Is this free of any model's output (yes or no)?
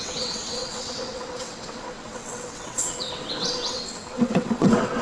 no